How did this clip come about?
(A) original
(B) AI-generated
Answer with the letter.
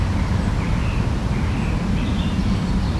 A